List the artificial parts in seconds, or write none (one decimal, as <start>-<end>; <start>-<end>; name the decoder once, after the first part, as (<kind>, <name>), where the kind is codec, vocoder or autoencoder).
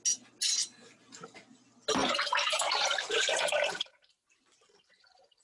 2.0-5.4 (vocoder, BigVGAN v2)